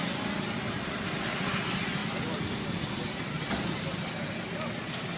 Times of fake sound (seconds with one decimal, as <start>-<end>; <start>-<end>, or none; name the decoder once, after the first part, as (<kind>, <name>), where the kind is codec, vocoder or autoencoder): none